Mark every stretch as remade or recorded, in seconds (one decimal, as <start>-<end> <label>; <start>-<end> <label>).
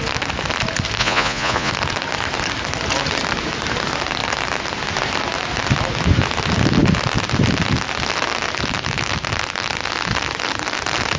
0.0-1.0 recorded; 1.0-1.7 remade; 1.7-11.2 recorded